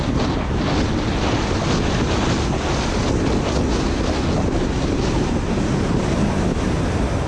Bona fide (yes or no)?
yes